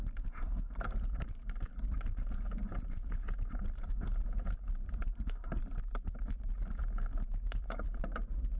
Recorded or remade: remade